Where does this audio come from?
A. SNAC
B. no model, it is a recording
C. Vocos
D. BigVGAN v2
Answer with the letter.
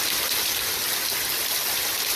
B